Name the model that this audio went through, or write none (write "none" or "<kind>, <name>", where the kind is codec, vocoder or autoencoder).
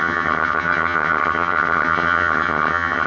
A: vocoder, HiFi-GAN